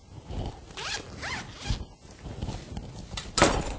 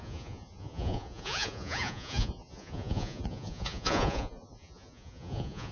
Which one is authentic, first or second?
first